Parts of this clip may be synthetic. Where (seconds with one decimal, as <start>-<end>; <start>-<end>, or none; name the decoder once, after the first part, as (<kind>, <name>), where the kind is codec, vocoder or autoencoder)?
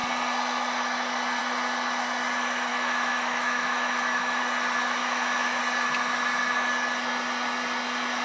2.7-4.4 (autoencoder, DAC-VAE); 5.0-5.6